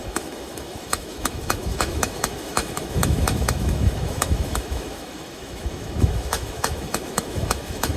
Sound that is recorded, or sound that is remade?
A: remade